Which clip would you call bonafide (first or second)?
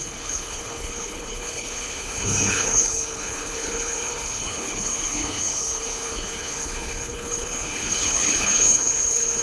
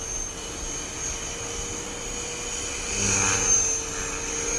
second